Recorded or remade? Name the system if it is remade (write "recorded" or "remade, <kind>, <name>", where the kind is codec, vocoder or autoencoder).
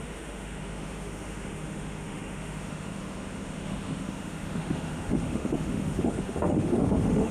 remade, autoencoder, DAC-VAE